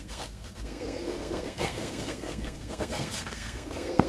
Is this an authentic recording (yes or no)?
no